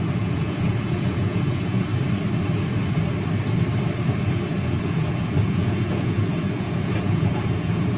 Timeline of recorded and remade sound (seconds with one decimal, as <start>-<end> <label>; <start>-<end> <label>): 0.0-1.9 remade; 1.9-4.6 recorded; 4.6-8.0 remade